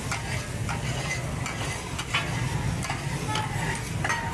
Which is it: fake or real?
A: real